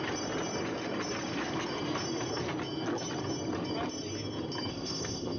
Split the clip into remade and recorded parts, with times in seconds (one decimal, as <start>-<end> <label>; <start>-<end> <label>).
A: 0.0-4.7 recorded; 4.7-5.4 remade